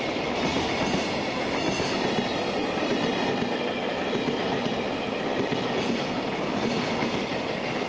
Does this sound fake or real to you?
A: real